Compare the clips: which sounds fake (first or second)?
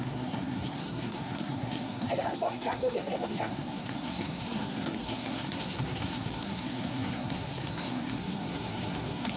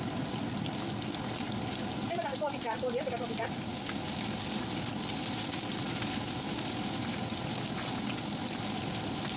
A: first